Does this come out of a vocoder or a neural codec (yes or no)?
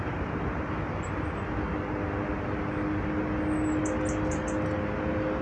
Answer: no